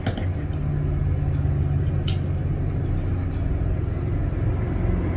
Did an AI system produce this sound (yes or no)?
no